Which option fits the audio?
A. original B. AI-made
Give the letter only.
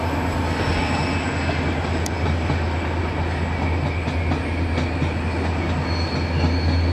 A